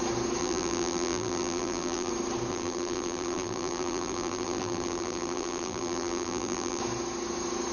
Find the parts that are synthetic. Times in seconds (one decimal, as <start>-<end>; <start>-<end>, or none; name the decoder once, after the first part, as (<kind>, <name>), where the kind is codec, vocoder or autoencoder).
0.4-2.1 (vocoder, BigVGAN v2); 2.5-6.8